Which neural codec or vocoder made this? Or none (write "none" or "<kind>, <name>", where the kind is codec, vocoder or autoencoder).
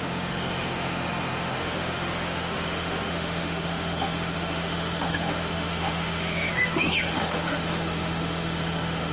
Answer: autoencoder, DAC-VAE